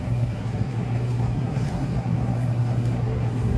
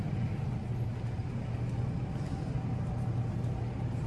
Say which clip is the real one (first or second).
second